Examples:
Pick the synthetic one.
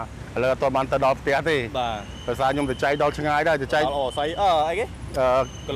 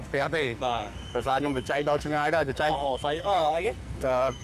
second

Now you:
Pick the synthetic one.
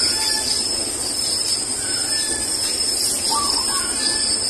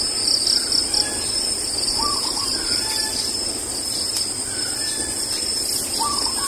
second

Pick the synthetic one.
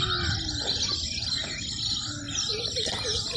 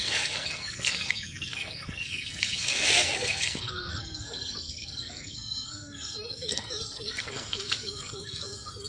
second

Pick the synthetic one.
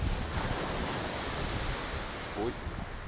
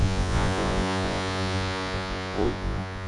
second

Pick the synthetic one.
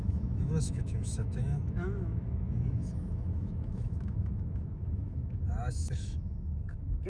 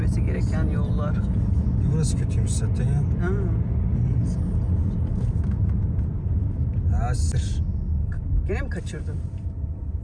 first